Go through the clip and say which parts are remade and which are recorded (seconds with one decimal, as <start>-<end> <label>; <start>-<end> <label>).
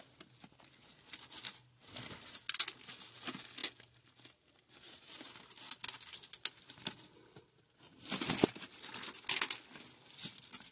0.0-10.7 recorded